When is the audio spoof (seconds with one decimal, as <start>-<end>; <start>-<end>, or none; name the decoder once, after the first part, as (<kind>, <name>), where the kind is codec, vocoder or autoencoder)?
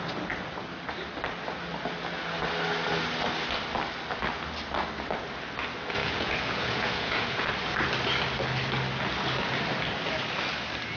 6.0-7.5 (vocoder, Vocos)